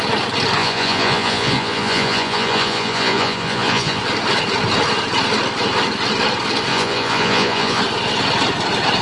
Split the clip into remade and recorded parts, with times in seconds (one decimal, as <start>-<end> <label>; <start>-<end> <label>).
0.0-0.6 recorded; 0.6-4.0 remade; 4.0-6.7 recorded; 6.7-7.8 remade; 7.8-9.0 recorded